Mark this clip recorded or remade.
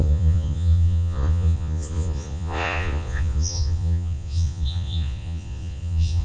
remade